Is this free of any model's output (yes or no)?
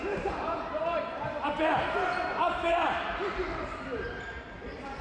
no